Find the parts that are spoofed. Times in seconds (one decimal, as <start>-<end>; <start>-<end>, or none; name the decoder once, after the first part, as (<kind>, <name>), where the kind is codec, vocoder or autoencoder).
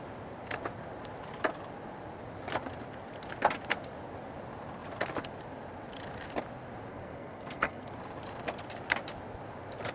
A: 6.9-7.9 (codec, SNAC)